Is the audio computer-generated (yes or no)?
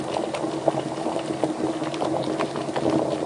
no